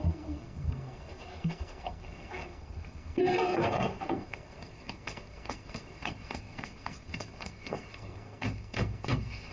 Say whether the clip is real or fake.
fake